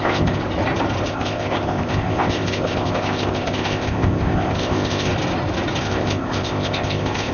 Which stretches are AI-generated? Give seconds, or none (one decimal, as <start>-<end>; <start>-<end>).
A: 0.0-0.4; 1.1-5.1; 5.8-7.3